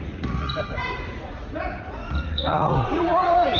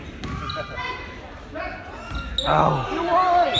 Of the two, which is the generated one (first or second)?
first